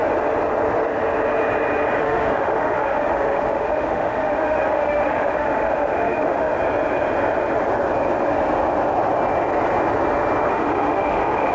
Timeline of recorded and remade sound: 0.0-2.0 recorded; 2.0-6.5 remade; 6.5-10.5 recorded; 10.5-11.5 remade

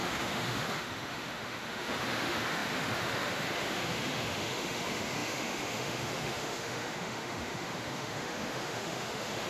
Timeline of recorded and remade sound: 0.0-9.5 remade

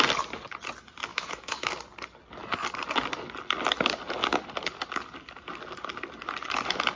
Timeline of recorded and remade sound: 0.0-1.1 recorded; 1.1-1.7 remade; 1.7-7.0 recorded

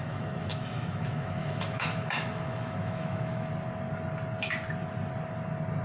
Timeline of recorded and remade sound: 0.0-3.5 remade; 3.5-5.8 recorded

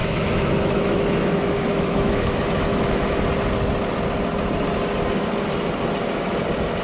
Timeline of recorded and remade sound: 0.0-3.2 remade; 3.2-6.8 recorded

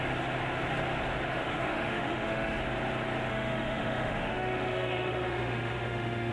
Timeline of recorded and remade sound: 0.0-1.3 recorded; 1.3-2.6 remade; 2.6-3.3 recorded; 3.3-6.3 remade

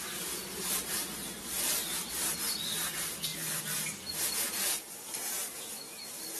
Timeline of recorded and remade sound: 0.0-6.4 recorded